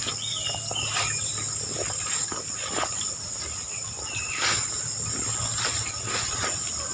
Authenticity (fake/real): real